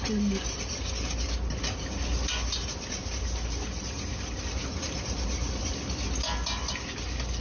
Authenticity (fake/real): real